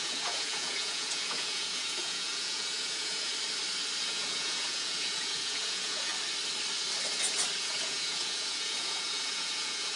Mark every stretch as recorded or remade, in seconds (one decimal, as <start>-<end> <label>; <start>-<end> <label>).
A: 0.0-3.3 remade; 3.3-4.0 recorded; 4.0-6.1 remade; 6.1-7.6 recorded; 7.6-10.0 remade